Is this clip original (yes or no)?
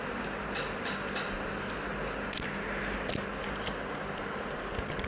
yes